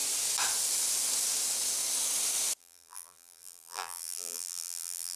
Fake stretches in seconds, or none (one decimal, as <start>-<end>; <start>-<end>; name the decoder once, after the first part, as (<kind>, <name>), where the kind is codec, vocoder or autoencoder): 2.6-5.2 (vocoder, BigVGAN v2)